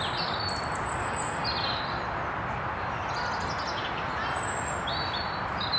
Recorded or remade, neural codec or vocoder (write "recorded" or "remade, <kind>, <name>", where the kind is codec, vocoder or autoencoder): recorded